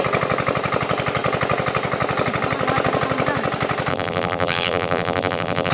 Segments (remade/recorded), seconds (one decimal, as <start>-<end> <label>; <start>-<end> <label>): 0.0-3.9 recorded; 3.9-5.7 remade